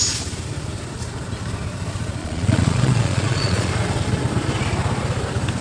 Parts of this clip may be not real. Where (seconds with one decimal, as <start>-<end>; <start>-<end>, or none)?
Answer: 2.2-3.7